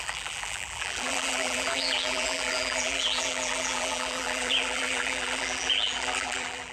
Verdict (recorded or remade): remade